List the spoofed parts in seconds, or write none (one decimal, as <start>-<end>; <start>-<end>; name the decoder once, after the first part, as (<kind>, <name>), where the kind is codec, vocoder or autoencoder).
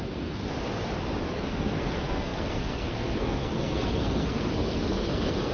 0.0-0.4 (codec, SNAC); 1.3-5.5